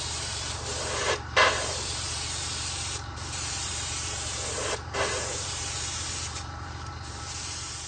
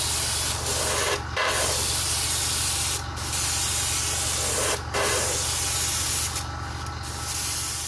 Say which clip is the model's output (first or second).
first